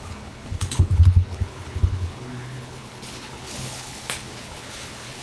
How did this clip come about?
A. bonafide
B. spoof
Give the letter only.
B